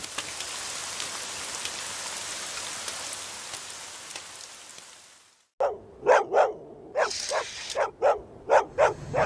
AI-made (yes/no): no